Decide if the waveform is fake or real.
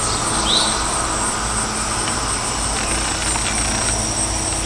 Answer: real